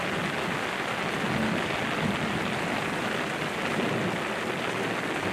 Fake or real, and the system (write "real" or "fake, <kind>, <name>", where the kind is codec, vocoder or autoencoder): real